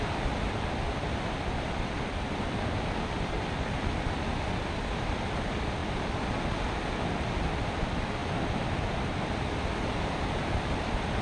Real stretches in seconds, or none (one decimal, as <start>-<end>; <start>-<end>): 5.8-6.5